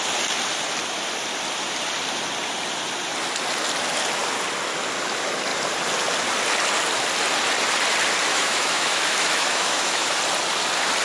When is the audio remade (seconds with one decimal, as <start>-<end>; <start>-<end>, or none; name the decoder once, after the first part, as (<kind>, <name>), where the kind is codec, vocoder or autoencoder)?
8.3-10.2 (autoencoder, DAC-VAE)

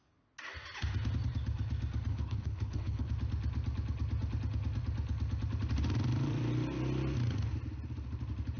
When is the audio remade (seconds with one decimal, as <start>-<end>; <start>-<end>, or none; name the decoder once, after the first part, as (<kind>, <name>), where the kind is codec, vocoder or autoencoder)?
2.1-3.1 (codec, HILCodec)

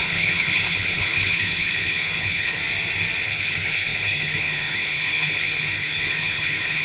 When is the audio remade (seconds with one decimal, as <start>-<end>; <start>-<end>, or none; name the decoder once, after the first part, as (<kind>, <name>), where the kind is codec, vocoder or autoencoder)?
0.0-2.6 (codec, HILCodec); 3.2-6.8

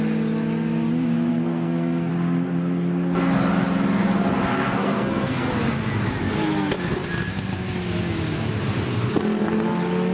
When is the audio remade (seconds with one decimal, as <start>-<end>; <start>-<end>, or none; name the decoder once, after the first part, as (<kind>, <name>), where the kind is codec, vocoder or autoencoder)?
1.3-2.1 (codec, SNAC); 4.5-5.5

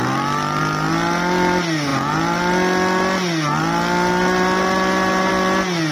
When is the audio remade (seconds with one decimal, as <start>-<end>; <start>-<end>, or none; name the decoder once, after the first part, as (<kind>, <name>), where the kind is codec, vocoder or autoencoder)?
none

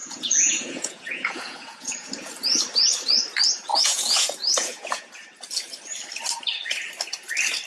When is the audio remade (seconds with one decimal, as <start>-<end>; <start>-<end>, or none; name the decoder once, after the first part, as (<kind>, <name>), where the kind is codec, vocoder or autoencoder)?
0.0-2.1 (vocoder, Vocos); 3.7-5.1

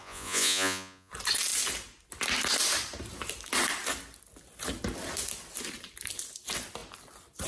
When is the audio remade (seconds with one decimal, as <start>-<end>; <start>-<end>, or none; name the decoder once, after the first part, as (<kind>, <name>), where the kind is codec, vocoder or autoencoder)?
0.0-1.1 (vocoder, Vocos)